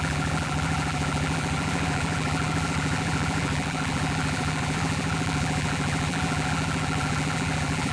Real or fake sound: fake